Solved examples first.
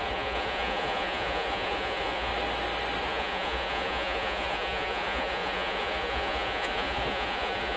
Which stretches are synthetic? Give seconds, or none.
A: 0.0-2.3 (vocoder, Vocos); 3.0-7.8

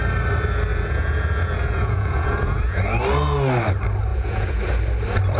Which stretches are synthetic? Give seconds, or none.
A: 0.7-2.8 (vocoder, Vocos); 4.1-4.6